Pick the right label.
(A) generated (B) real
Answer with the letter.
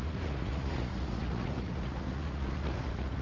A